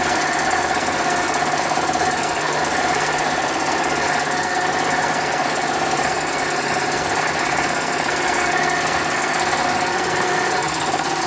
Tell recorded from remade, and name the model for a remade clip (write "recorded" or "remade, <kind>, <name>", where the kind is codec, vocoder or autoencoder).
remade, codec, SNAC